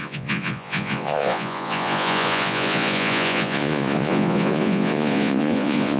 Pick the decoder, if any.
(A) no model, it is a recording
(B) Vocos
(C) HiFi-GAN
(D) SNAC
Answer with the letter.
B